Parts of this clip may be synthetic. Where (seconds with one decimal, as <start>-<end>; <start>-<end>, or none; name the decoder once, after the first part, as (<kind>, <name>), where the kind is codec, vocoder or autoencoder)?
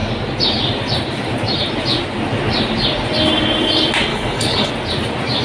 4.1-4.7 (codec, HILCodec)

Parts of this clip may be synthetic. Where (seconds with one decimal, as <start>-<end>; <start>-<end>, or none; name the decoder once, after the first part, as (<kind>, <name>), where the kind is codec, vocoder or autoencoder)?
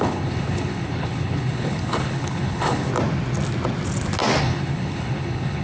0.0-2.9 (codec, HILCodec); 4.4-5.6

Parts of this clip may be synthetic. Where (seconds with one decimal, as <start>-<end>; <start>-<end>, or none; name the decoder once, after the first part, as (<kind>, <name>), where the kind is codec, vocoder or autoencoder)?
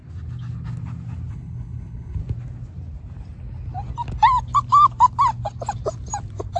1.3-2.2 (codec, HILCodec)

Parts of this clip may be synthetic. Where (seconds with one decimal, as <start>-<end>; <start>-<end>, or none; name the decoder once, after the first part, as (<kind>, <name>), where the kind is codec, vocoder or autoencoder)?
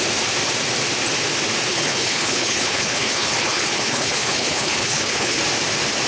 1.7-5.4 (codec, HILCodec)